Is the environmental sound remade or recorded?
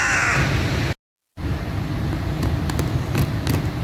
recorded